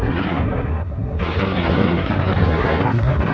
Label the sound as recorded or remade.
remade